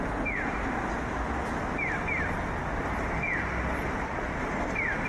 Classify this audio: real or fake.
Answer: real